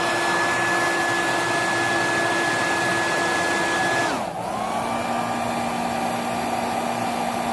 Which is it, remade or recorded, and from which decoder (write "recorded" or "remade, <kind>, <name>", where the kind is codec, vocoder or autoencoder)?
recorded